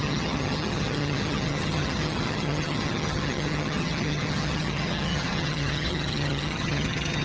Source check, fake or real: fake